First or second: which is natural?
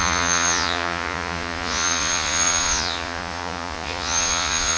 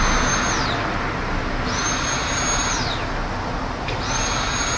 second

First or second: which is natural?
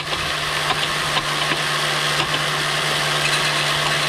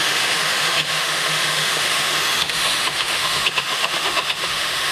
first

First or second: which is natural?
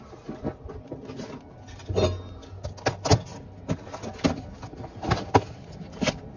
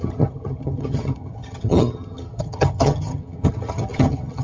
first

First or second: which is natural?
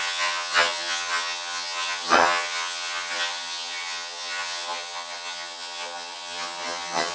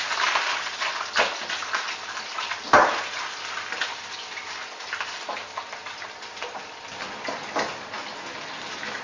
second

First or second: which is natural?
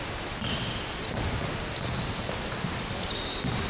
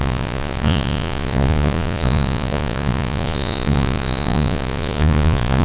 first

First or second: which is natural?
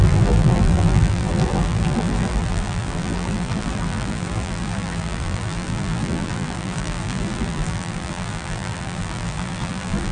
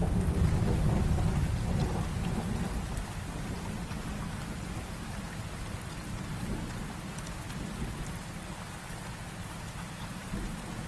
second